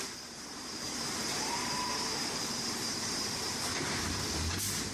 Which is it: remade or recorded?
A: remade